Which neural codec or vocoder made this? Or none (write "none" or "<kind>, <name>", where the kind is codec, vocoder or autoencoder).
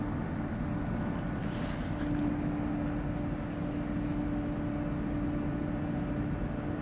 none